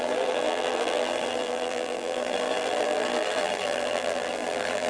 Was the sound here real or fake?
fake